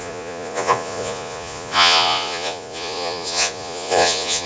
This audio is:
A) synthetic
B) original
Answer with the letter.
A